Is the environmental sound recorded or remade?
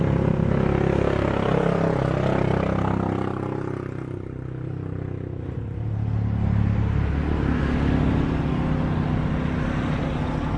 recorded